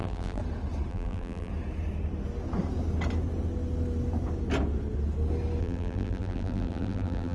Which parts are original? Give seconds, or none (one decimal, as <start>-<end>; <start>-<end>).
0.4-0.9; 1.5-5.6